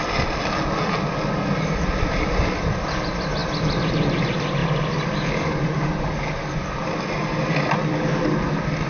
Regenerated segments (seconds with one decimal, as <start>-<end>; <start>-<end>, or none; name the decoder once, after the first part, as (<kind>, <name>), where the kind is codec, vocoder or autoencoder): none